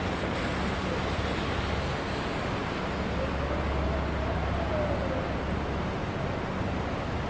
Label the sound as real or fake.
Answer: real